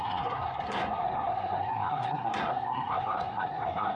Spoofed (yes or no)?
yes